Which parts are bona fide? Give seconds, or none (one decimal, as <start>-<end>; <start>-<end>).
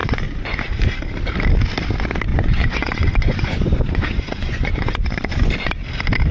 0.6-2.3; 5.5-6.3